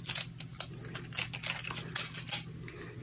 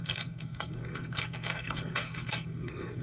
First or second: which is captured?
first